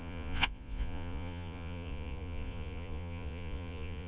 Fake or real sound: fake